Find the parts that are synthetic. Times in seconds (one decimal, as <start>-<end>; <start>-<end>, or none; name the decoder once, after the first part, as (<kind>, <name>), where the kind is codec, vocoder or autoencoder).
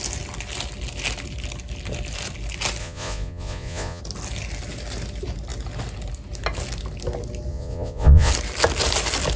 2.8-4.0 (vocoder, Vocos); 7.5-8.3